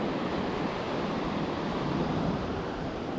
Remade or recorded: recorded